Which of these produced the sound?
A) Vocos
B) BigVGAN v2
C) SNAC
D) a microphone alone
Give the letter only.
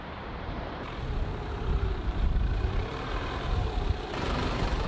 B